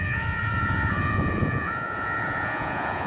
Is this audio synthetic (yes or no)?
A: yes